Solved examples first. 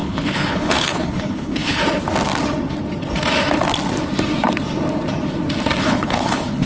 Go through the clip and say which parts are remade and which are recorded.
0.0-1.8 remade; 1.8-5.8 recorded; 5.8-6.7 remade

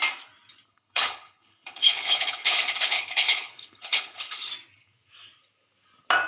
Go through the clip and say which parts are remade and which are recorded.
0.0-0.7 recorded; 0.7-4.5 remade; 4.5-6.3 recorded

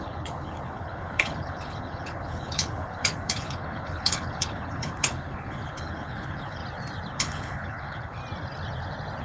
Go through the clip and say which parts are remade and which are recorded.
0.0-6.6 remade; 6.6-7.1 recorded; 7.1-8.2 remade; 8.2-9.2 recorded

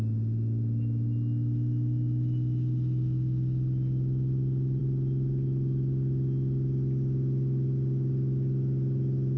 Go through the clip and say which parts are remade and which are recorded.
0.0-9.4 recorded